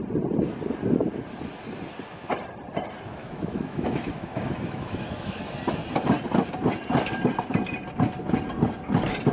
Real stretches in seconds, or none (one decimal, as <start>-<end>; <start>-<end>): 0.0-3.2; 5.4-9.3